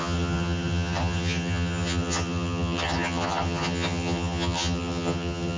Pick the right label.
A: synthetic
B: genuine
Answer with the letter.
A